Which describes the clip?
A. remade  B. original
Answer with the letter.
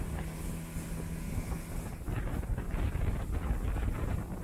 B